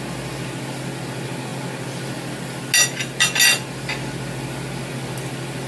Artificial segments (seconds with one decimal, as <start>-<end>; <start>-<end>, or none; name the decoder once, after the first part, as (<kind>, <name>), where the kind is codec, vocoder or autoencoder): none